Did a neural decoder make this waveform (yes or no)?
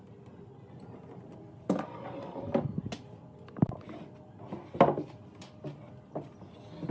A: no